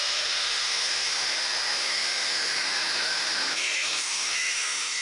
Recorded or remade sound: remade